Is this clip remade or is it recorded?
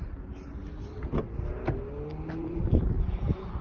recorded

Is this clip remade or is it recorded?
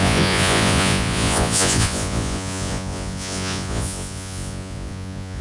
remade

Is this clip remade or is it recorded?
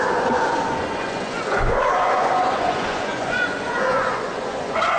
remade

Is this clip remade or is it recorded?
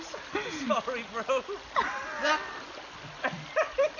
recorded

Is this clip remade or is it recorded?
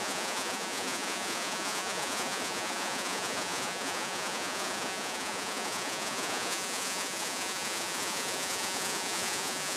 remade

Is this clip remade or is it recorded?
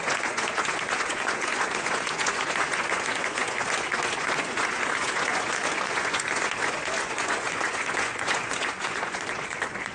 remade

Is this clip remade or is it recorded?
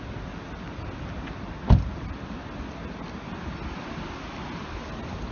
recorded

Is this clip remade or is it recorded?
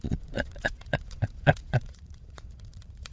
remade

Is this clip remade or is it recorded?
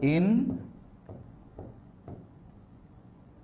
remade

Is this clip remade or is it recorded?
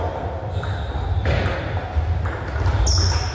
recorded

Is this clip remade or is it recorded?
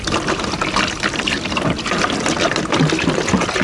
recorded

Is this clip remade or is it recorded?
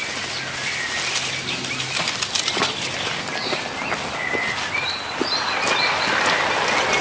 recorded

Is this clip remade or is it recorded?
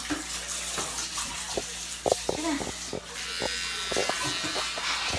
recorded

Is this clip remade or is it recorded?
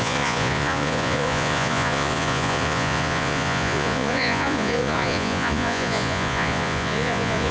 remade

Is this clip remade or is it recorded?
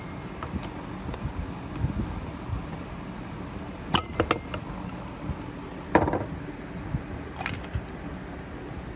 recorded